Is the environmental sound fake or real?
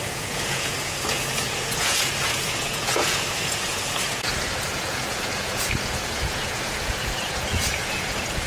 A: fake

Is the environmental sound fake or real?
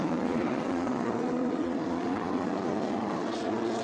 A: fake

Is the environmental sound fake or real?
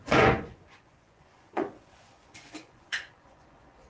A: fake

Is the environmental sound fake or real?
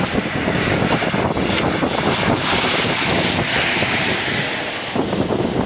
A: real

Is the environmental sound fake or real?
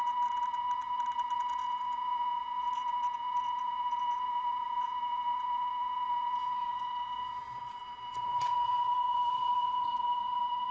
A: fake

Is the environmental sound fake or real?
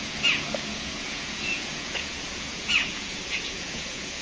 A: fake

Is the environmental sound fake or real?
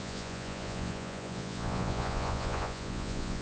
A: fake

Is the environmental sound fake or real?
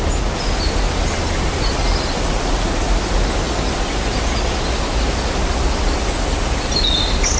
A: real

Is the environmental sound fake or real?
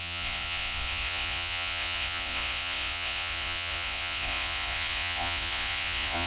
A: fake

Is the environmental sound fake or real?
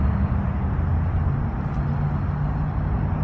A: real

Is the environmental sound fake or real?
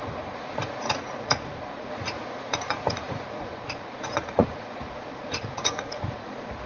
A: fake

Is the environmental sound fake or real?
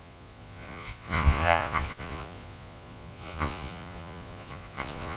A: fake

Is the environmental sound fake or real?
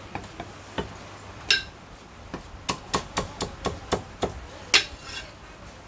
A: real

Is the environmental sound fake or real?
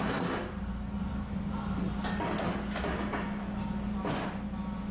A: real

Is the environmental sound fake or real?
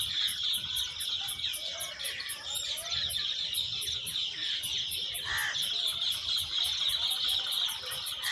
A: real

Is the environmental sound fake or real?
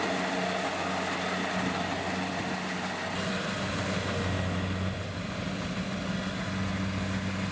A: real